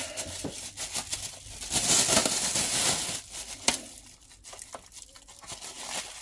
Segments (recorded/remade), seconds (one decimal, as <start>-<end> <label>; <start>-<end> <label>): 0.0-6.2 recorded